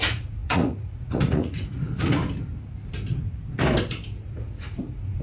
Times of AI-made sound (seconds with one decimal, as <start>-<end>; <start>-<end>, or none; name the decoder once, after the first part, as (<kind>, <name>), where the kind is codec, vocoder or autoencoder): 0.0-2.2 (vocoder, Vocos); 4.2-5.2